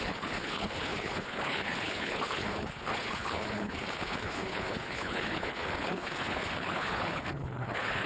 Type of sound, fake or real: fake